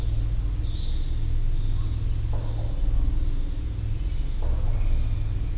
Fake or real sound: real